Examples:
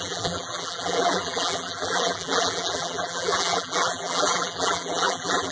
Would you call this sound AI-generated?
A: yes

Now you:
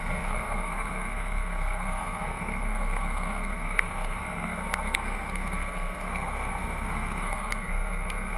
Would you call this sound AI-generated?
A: yes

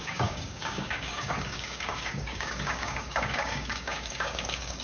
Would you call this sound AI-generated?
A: yes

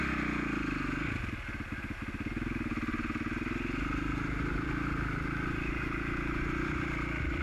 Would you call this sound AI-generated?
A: no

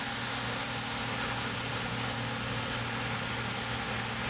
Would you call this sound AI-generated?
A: no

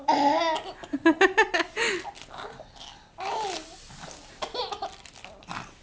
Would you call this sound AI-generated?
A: no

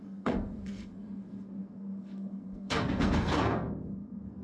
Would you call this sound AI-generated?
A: yes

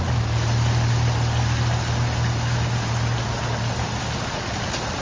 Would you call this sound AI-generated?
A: no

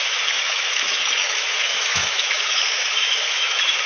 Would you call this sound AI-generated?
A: yes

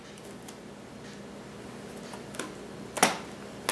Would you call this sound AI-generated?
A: no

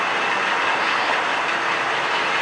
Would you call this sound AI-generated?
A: no